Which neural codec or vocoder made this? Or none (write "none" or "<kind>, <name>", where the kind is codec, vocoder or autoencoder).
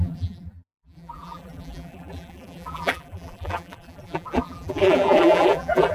vocoder, BigVGAN v2